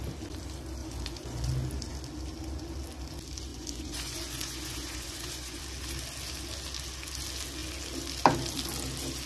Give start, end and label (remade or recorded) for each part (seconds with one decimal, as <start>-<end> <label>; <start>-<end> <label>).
0.0-0.8 recorded; 0.8-1.5 remade; 1.5-3.5 recorded; 3.5-5.6 remade; 5.6-9.3 recorded